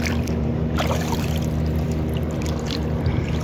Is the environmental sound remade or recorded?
remade